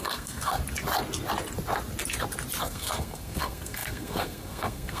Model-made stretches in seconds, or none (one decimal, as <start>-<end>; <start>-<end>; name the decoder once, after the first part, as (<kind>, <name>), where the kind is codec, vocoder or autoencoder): 0.0-0.6 (codec, SNAC); 2.6-5.0